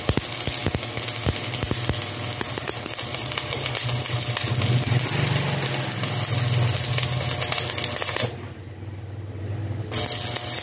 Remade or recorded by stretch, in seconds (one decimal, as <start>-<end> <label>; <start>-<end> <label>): 0.0-10.6 recorded